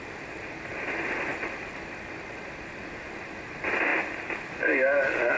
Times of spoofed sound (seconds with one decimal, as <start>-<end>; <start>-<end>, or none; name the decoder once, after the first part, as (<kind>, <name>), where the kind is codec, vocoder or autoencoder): none